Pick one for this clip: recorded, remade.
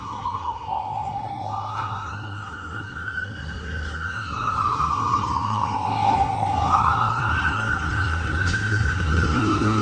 remade